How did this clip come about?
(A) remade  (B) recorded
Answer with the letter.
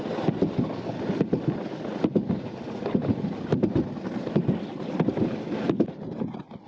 B